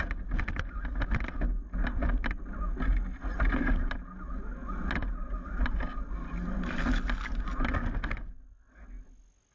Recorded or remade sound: recorded